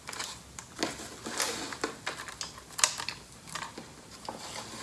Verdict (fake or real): real